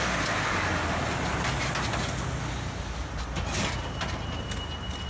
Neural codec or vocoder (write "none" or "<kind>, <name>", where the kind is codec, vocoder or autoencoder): none